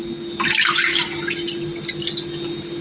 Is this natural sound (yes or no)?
yes